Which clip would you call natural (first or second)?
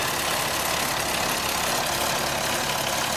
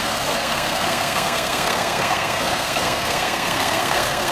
first